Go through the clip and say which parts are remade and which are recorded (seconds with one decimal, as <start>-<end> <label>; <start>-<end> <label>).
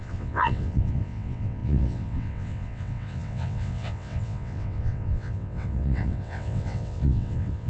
0.0-7.7 remade